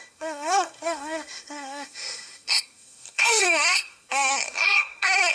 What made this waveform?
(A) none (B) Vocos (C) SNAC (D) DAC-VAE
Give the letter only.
C